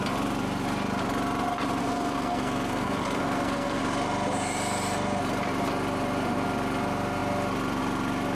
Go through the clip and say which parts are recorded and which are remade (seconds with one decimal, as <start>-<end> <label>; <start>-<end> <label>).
0.0-1.8 recorded; 1.8-3.8 remade; 3.8-8.3 recorded